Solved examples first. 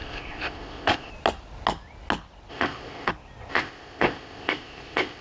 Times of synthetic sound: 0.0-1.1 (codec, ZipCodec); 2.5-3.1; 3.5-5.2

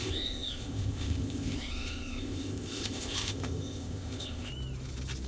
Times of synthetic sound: 0.0-4.5 (codec, ZipCodec)